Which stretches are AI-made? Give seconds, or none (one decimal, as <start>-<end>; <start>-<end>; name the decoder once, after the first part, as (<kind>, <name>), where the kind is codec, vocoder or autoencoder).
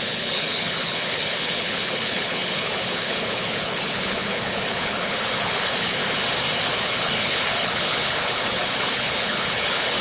0.0-6.0 (codec, HILCodec); 6.6-10.0